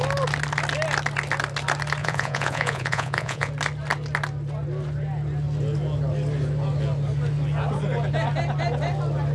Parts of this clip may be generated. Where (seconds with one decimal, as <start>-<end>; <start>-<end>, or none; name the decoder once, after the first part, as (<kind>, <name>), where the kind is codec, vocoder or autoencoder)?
2.0-3.5 (vocoder, Vocos)